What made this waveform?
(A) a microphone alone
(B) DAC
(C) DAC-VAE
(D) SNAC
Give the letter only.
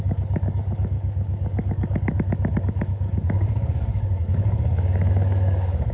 B